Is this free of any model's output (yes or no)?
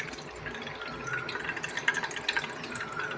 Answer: yes